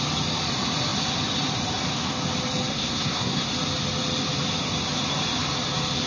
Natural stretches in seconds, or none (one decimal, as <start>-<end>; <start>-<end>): 0.0-2.7; 3.5-6.1